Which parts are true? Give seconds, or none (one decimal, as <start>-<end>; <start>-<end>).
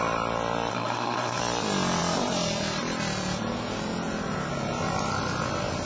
0.0-0.7; 1.4-5.9